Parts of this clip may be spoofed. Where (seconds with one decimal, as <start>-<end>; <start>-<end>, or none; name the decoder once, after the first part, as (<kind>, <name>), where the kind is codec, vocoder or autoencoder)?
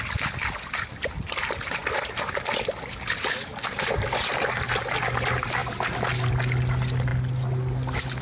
none